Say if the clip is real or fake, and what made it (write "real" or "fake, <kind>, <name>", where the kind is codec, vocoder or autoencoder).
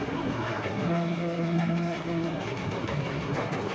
fake, codec, SNAC